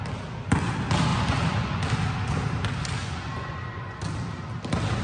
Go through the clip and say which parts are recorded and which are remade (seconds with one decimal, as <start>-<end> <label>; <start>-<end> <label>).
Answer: 0.0-1.1 recorded; 1.1-1.8 remade; 1.8-3.0 recorded; 3.0-4.0 remade; 4.0-5.0 recorded